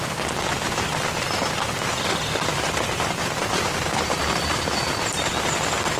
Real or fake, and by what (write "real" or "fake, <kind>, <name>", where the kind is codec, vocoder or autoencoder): fake, vocoder, BigVGAN v2